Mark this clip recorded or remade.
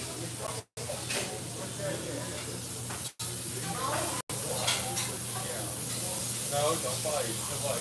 recorded